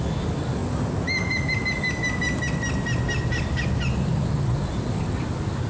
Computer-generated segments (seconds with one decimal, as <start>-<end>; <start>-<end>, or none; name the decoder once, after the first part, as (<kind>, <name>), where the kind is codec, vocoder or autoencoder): none